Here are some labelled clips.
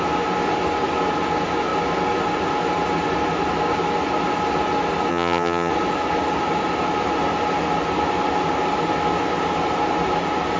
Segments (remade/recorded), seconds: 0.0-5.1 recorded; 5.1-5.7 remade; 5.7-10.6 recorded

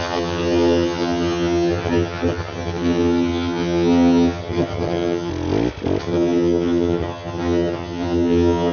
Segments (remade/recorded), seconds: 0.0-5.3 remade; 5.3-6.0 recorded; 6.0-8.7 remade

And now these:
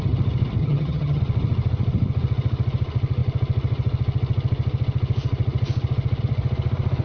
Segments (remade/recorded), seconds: 0.0-0.6 recorded; 0.6-1.2 remade; 1.2-7.0 recorded

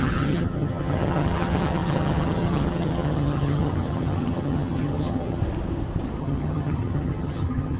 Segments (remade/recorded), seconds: 0.0-5.4 remade; 5.4-6.2 recorded; 6.2-7.8 remade

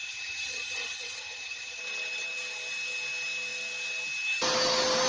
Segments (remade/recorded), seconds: 0.0-1.8 remade; 1.8-5.1 recorded